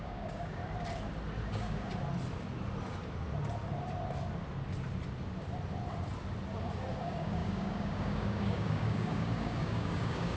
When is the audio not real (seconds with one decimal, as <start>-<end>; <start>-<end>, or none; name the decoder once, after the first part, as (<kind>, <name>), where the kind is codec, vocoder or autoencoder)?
0.0-0.6 (codec, DAC); 1.5-1.9; 7.0-10.4